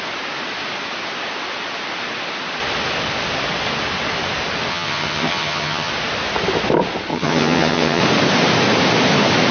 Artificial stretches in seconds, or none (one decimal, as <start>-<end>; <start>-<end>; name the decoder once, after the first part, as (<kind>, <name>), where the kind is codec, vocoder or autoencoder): 4.7-5.9 (vocoder, HiFi-GAN); 7.1-8.0